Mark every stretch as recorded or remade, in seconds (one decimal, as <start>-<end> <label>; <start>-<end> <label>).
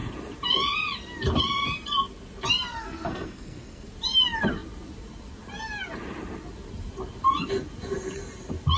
0.0-2.7 recorded; 2.7-3.9 remade; 3.9-8.8 recorded